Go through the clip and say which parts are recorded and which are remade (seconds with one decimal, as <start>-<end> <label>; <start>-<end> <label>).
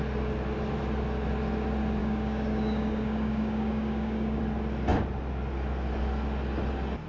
0.0-2.0 recorded; 2.0-4.4 remade; 4.4-7.1 recorded